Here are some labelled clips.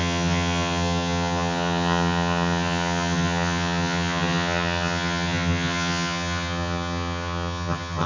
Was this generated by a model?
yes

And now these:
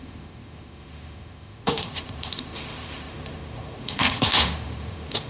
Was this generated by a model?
yes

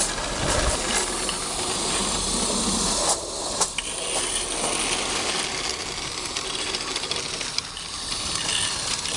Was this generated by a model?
no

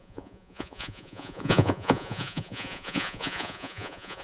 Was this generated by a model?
yes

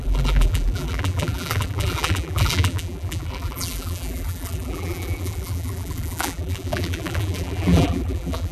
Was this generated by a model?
yes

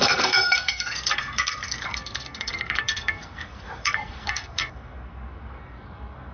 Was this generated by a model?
yes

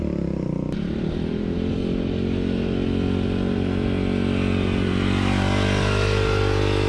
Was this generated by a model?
no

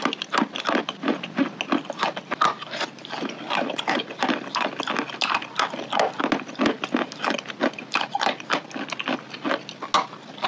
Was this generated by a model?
no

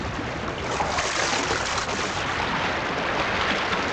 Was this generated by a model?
no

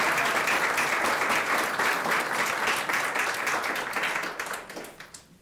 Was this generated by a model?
yes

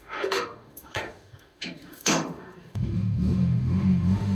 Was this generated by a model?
yes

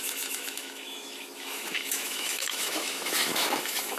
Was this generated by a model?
yes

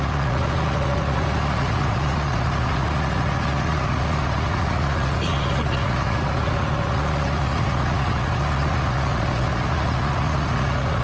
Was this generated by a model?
yes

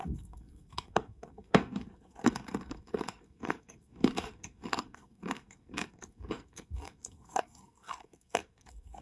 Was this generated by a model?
yes